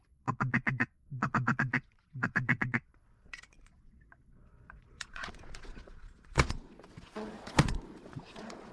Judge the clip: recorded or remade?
remade